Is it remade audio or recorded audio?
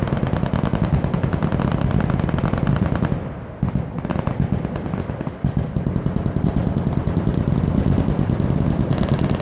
recorded